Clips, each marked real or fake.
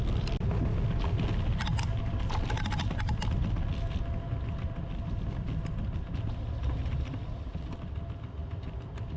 real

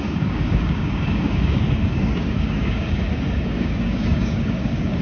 fake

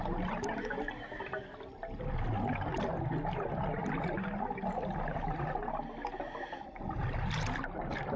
real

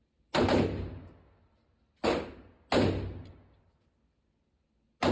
real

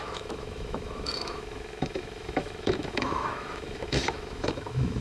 fake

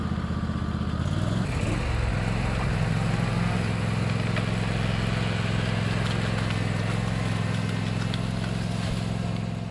real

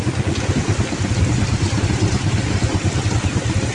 real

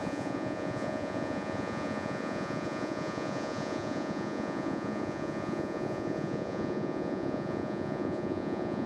fake